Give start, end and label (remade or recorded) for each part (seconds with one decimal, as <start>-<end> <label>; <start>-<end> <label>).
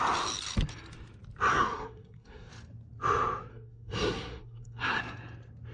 0.0-1.5 recorded; 1.5-2.5 remade; 2.5-3.5 recorded; 3.5-5.0 remade; 5.0-5.7 recorded